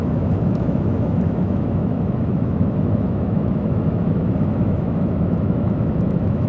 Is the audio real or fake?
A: fake